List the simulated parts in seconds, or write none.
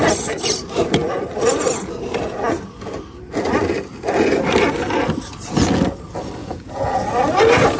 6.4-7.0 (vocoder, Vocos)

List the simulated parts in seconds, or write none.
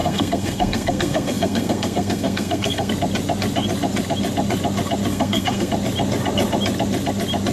0.0-2.9 (codec, SNAC); 5.1-5.7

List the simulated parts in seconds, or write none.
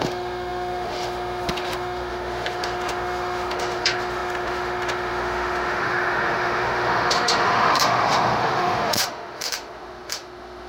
0.0-10.7 (autoencoder, DAC-VAE)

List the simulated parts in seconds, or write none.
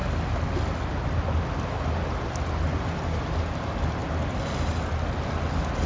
none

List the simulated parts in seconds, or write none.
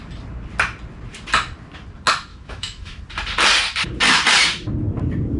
2.3-3.0 (autoencoder, DAC-VAE)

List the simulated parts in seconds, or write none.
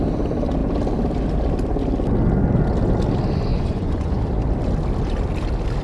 3.5-4.2 (vocoder, Vocos)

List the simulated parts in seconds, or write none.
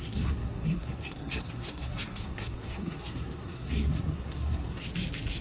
0.0-4.8 (codec, SNAC)